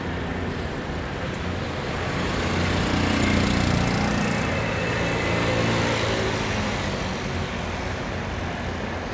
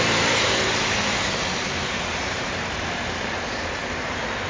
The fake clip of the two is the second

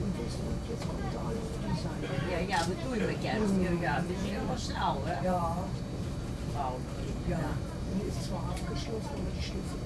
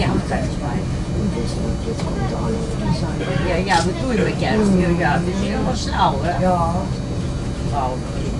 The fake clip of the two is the first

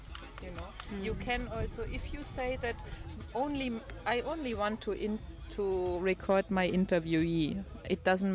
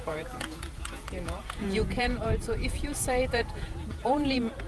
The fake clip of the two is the second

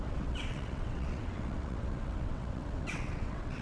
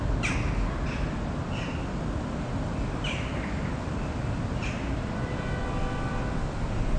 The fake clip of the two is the first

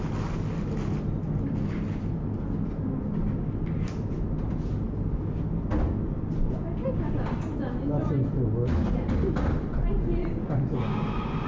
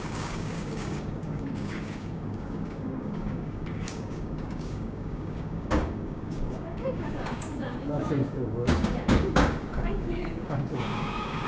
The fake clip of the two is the second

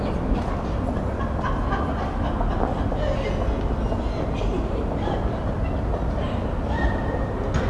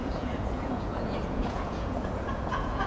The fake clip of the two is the second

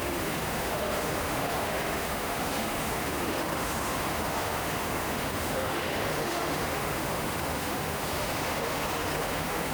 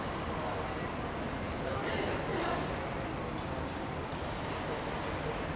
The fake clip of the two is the first